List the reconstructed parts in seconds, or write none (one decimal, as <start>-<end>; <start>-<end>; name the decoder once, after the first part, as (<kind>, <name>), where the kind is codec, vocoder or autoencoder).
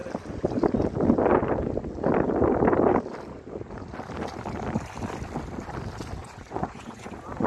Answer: 6.2-7.5 (vocoder, Vocos)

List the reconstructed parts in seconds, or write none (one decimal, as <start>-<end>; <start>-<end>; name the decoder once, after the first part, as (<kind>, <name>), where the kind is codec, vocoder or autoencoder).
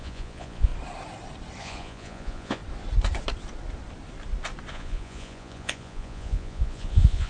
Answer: 0.0-0.7 (vocoder, Vocos); 1.6-2.6; 4.7-7.3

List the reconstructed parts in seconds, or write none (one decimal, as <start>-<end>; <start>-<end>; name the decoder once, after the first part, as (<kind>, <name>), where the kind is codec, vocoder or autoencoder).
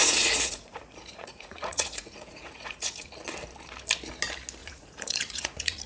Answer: 0.0-3.1 (vocoder, Vocos); 4.6-5.9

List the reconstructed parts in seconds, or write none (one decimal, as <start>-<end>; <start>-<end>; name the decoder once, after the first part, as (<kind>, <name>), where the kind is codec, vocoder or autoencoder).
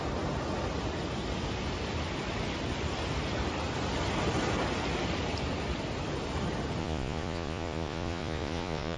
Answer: 6.8-9.0 (vocoder, Vocos)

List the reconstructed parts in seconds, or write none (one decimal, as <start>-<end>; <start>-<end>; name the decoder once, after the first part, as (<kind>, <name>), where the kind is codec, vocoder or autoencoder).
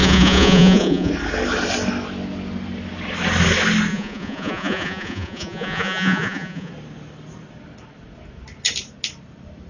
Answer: 0.0-1.1 (vocoder, Vocos); 3.9-6.7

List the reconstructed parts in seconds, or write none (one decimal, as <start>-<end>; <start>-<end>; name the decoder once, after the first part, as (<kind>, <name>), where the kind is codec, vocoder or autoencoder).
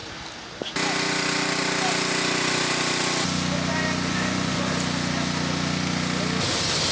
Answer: 4.1-4.7 (vocoder, Vocos)